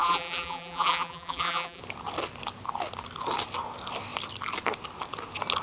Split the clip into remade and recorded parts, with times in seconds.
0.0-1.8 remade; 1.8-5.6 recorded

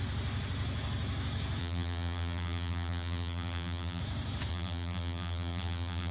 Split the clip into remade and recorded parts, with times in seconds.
0.0-1.6 recorded; 1.6-4.0 remade; 4.0-4.5 recorded; 4.5-6.1 remade